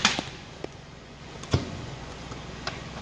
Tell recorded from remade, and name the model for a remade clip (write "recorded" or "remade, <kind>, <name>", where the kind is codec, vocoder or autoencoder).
remade, vocoder, Vocos